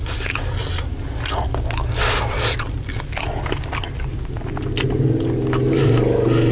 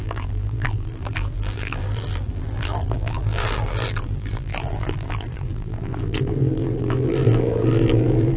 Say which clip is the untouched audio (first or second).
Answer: first